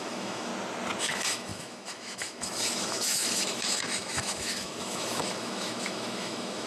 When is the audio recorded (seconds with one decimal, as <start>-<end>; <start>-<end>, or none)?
0.5-1.0